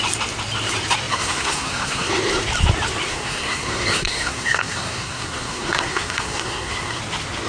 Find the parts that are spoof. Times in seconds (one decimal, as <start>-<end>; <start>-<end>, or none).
1.1-2.1; 3.1-7.0